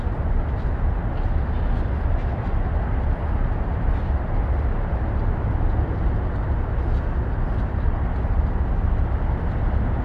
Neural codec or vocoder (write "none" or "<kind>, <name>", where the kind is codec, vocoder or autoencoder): none